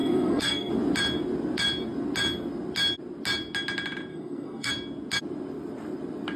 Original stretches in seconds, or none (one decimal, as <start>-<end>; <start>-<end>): 0.7-4.1; 4.7-6.4